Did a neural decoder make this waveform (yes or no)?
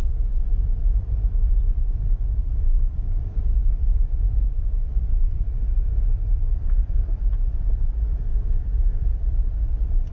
yes